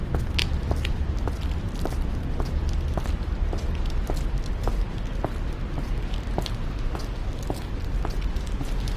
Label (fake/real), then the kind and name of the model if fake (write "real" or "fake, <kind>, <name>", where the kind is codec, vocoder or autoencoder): real